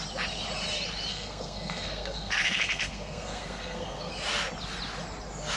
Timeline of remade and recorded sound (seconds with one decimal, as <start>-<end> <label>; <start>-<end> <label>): 0.0-1.1 recorded; 1.1-4.1 remade; 4.1-5.6 recorded